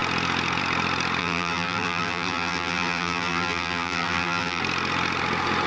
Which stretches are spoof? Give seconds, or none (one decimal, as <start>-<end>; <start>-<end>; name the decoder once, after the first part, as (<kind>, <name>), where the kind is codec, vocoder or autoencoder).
1.2-4.6 (vocoder, BigVGAN v2)